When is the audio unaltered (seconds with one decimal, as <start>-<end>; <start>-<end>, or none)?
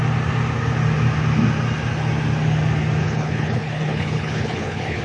0.0-3.0